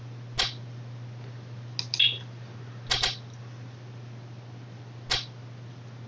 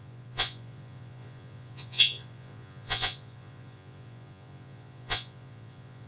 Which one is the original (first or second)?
first